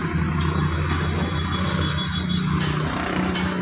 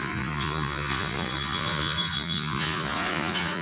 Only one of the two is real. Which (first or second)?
first